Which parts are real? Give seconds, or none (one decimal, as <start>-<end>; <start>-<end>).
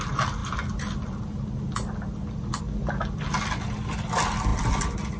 0.0-5.2